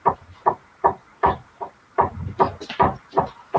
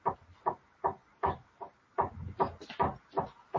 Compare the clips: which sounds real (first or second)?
second